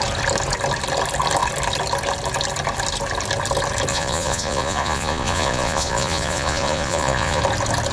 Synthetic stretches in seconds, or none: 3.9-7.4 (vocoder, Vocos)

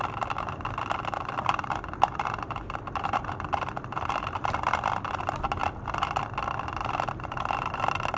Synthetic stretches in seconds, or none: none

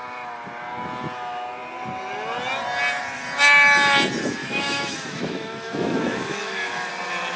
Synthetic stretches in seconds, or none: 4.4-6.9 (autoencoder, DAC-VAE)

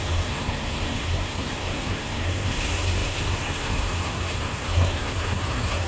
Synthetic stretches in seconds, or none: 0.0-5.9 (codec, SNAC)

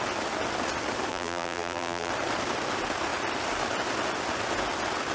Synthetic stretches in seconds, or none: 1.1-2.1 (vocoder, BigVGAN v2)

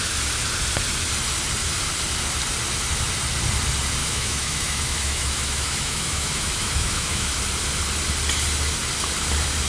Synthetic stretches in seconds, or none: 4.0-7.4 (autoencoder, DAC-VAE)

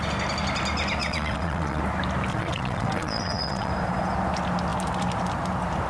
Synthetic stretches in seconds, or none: 1.0-1.8 (vocoder, WaveNeXt); 2.3-3.7